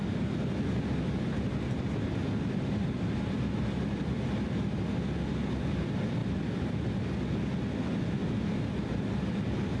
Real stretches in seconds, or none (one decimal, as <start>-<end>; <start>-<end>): 0.0-9.8